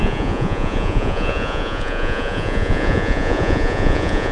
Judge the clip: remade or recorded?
remade